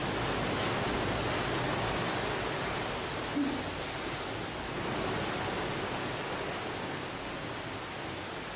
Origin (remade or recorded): recorded